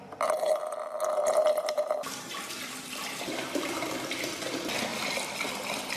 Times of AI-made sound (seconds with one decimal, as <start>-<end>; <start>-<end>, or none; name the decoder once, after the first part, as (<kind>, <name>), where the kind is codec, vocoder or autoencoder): 1.4-4.0 (vocoder, BigVGAN v2)